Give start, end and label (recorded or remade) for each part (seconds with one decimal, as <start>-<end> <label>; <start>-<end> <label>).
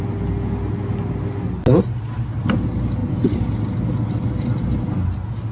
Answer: 0.0-5.5 recorded